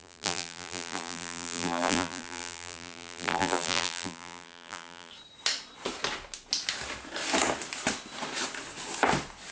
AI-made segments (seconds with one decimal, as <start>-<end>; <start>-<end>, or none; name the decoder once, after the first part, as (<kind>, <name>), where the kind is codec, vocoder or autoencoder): 0.0-5.1 (vocoder, BigVGAN v2)

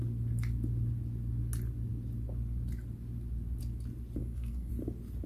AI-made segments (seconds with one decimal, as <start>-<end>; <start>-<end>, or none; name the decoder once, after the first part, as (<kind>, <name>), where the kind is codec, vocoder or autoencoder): 4.2-4.7 (codec, SNAC)

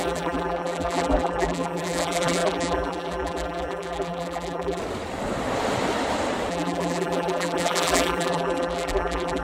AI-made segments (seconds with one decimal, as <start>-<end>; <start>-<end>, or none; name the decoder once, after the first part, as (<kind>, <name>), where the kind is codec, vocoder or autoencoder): 0.0-4.8 (vocoder, BigVGAN v2); 6.5-9.4

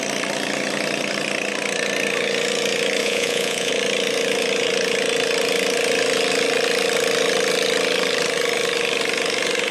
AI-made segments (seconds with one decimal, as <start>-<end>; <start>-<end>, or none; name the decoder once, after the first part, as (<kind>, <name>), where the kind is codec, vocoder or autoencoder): 3.0-3.7 (vocoder, Vocos)